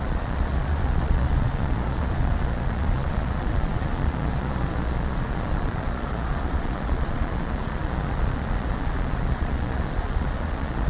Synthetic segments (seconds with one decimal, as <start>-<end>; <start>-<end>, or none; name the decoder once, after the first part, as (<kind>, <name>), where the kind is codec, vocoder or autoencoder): 0.0-10.9 (vocoder, Vocos)